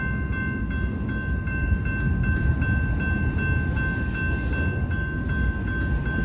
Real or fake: real